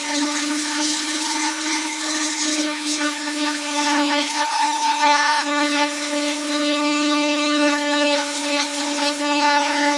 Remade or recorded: remade